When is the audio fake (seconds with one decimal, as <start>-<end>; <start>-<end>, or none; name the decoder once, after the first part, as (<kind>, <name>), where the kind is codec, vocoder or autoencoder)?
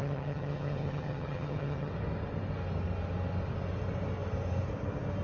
0.0-1.9 (vocoder, HiFi-GAN)